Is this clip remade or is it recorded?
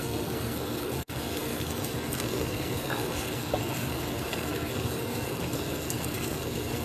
remade